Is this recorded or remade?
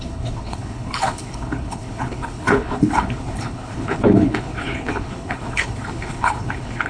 remade